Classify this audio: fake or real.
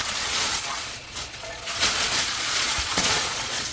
fake